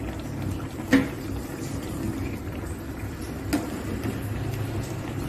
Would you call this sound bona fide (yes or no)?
yes